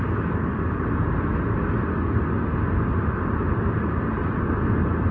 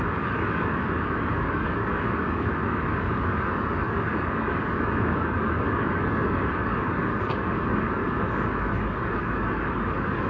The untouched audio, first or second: first